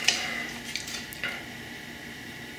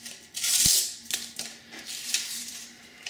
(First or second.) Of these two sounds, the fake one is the second